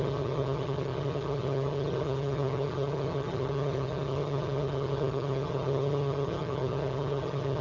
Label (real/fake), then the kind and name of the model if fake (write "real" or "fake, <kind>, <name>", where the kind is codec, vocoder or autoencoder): fake, vocoder, HiFi-GAN